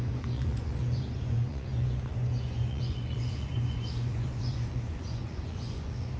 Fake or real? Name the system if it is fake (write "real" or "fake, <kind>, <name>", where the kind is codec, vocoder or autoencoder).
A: fake, vocoder, Vocos